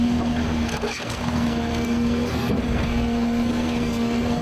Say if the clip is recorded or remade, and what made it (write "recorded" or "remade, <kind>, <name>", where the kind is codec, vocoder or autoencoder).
remade, codec, SNAC